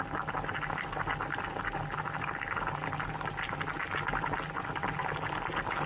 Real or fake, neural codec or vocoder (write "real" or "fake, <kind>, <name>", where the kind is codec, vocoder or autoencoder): real